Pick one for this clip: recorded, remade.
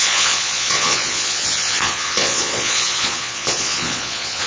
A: remade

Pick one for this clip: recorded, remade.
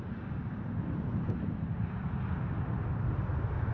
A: recorded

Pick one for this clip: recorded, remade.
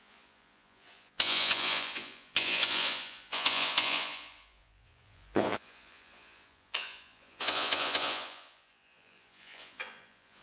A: remade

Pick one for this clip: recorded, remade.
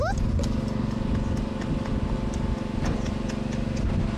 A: recorded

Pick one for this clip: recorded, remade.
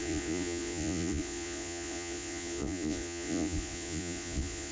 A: remade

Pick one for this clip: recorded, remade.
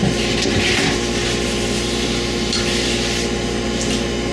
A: recorded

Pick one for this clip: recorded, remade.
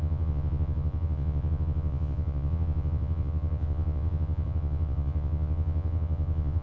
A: remade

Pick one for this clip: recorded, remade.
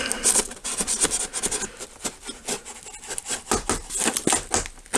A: recorded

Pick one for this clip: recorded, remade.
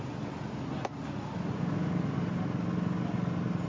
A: recorded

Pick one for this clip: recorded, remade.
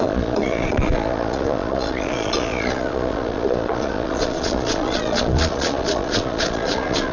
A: remade